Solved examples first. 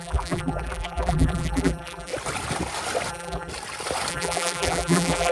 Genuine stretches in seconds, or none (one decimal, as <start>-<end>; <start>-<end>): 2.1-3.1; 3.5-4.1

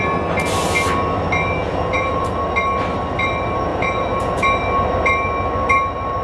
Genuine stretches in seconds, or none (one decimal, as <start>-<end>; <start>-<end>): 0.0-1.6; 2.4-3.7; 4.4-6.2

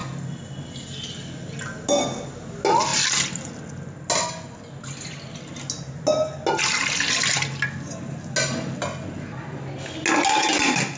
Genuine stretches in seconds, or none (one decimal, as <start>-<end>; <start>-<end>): 0.0-11.0